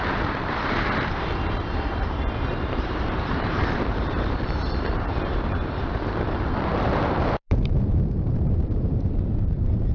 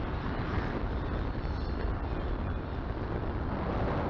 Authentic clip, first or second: second